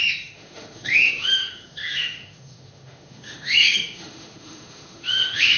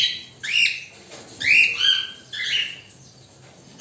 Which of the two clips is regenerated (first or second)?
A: first